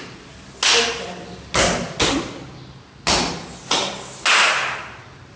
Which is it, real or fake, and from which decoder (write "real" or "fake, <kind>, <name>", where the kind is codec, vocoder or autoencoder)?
real